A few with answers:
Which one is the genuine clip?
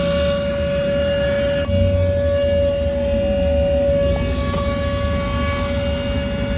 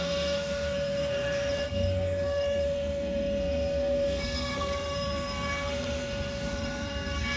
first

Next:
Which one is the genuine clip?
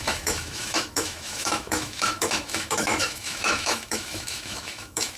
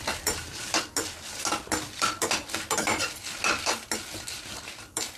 second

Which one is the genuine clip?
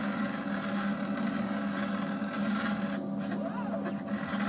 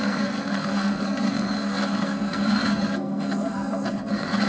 first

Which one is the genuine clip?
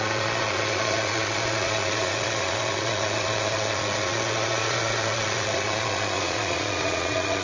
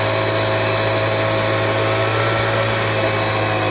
second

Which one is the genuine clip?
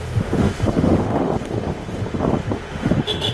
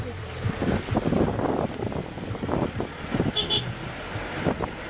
second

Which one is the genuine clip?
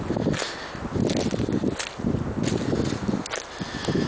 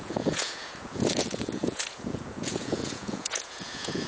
first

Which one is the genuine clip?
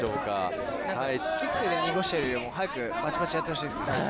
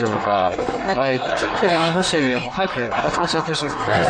first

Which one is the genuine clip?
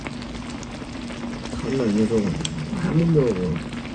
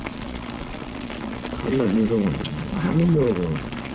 first